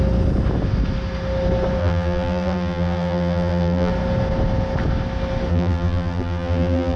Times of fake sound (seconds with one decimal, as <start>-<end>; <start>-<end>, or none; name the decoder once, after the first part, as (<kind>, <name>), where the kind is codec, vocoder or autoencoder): 1.8-3.9 (vocoder, BigVGAN v2); 5.5-7.0